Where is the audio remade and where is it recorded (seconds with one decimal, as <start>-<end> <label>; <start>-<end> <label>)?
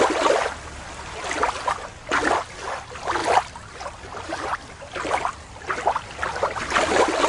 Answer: 0.0-7.3 recorded